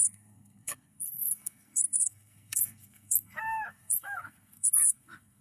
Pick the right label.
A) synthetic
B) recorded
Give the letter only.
A